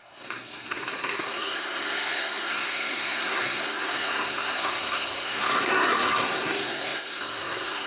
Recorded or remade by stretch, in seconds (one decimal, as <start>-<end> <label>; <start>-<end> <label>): 0.0-7.9 remade